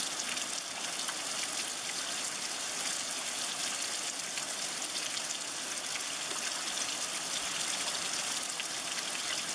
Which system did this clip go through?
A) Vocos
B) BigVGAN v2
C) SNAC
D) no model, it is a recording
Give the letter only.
D